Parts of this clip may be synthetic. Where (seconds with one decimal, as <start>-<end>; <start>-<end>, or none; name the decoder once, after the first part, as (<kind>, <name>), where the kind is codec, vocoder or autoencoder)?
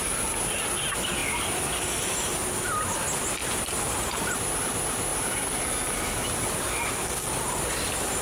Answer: none